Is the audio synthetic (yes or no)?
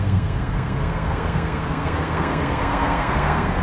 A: yes